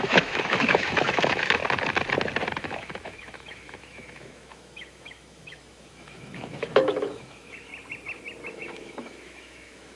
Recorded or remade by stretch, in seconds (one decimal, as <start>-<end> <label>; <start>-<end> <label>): 0.0-1.6 remade; 1.6-2.6 recorded; 2.6-7.7 remade; 7.7-8.5 recorded; 8.5-10.0 remade